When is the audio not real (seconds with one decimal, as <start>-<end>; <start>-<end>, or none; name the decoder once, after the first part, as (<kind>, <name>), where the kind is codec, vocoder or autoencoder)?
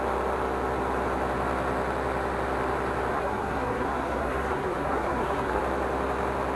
3.1-5.6 (codec, SNAC)